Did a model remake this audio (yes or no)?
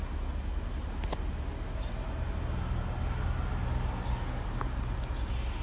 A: no